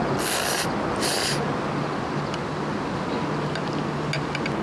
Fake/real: real